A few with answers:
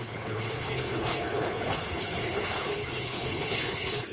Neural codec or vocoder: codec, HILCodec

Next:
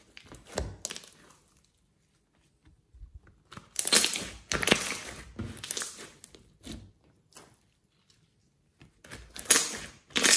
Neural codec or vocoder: none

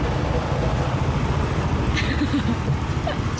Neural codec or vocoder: none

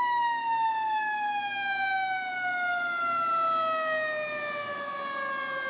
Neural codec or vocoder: none